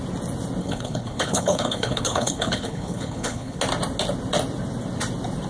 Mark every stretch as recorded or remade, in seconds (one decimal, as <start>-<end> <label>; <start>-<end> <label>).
0.0-0.6 recorded; 0.6-3.6 remade; 3.6-5.5 recorded

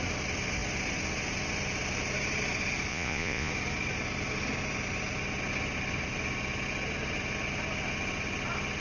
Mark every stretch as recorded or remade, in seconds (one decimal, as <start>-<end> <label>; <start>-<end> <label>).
0.0-2.9 recorded; 2.9-3.5 remade; 3.5-8.8 recorded

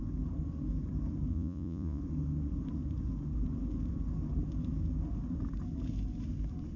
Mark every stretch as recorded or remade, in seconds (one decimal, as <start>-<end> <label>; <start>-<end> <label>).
0.0-1.3 recorded; 1.3-2.0 remade; 2.0-6.8 recorded

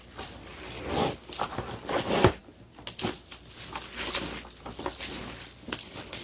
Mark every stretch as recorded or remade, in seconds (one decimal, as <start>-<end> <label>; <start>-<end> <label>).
0.0-6.2 recorded

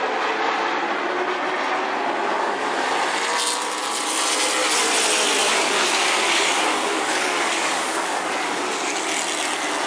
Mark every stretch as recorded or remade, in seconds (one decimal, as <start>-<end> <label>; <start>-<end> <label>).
0.0-2.3 recorded; 2.3-2.9 remade; 2.9-5.4 recorded; 5.4-8.6 remade; 8.6-9.9 recorded

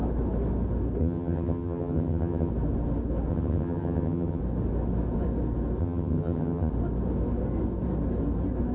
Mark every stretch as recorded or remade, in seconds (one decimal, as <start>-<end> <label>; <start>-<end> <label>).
0.0-1.0 recorded; 1.0-2.5 remade; 2.5-3.3 recorded; 3.3-4.4 remade; 4.4-5.8 recorded; 5.8-6.7 remade; 6.7-8.7 recorded